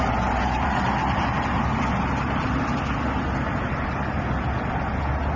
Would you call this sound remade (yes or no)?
no